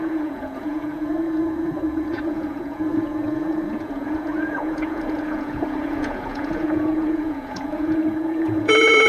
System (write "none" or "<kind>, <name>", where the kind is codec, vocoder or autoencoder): vocoder, Vocos